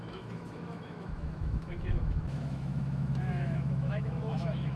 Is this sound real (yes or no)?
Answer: no